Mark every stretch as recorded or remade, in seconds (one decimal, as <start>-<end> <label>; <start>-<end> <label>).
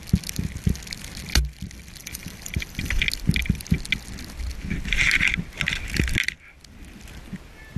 0.0-2.0 recorded; 2.0-3.0 remade; 3.0-7.8 recorded